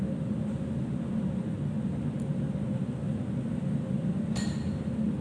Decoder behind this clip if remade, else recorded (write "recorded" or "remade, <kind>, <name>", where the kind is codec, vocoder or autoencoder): recorded